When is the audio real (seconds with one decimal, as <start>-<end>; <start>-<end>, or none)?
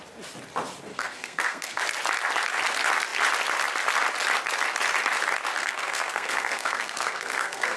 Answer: 0.0-0.9; 1.8-5.6